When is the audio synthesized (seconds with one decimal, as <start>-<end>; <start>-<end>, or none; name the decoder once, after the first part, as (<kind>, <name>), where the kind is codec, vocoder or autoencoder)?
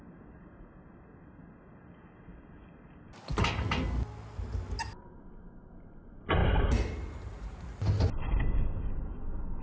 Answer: 6.4-7.6 (vocoder, BigVGAN v2)